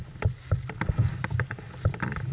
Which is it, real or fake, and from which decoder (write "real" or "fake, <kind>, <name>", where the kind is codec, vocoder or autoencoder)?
real